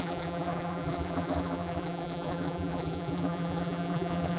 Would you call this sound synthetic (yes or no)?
yes